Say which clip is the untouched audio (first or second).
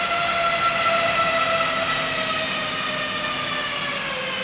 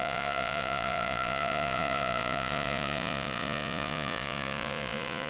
first